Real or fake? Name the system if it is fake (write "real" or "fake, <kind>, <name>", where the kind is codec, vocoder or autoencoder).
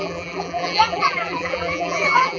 fake, vocoder, BigVGAN v2